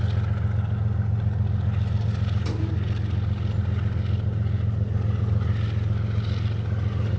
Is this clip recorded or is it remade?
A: recorded